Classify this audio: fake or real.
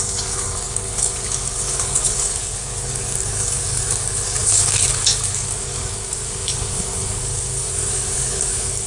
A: fake